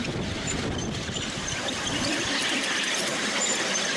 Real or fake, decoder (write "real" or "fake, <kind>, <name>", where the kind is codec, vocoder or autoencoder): real